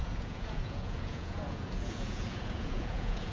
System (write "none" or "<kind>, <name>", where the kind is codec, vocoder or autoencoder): vocoder, Vocos